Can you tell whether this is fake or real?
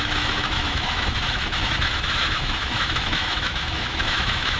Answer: fake